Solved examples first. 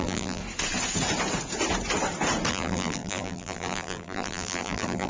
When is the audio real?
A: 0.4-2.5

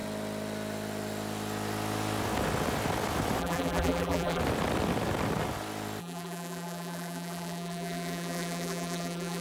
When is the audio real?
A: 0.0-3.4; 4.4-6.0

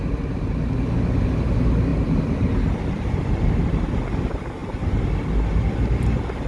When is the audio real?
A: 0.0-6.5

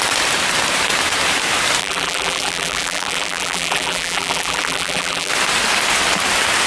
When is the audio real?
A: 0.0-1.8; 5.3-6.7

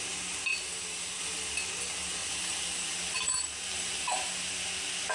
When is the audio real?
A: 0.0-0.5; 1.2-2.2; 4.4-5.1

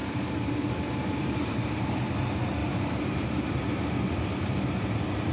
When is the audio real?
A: 2.0-2.6; 4.0-5.3